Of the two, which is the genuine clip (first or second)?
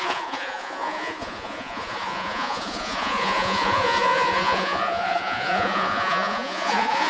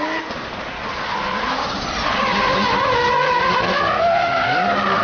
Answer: second